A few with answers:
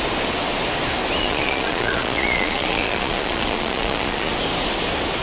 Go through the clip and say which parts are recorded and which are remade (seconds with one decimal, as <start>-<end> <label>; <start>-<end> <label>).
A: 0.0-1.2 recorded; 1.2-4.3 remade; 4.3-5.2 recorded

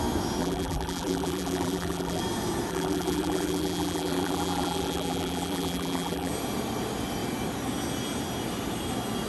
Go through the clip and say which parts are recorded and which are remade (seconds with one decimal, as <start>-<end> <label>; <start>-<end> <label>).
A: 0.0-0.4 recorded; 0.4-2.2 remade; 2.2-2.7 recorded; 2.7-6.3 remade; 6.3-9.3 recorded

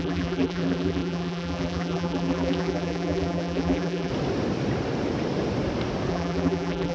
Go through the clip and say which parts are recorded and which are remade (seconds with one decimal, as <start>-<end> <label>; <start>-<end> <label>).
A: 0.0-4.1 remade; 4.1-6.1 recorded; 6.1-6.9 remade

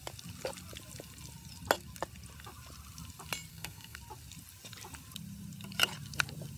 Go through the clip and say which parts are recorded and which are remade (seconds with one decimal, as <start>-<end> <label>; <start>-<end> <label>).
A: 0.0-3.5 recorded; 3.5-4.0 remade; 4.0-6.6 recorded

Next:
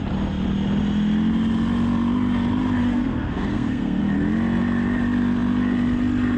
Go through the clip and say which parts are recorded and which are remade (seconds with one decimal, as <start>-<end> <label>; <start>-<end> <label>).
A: 0.0-2.8 recorded; 2.8-4.0 remade; 4.0-6.4 recorded